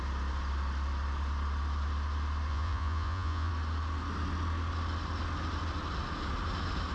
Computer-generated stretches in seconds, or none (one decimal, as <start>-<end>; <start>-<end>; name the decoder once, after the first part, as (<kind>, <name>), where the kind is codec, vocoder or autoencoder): 2.5-3.5 (vocoder, Vocos)